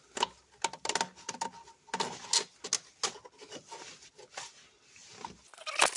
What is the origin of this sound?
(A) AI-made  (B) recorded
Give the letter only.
B